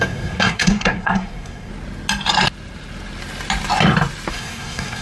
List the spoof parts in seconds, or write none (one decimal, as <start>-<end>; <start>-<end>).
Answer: 0.0-1.7; 4.3-5.0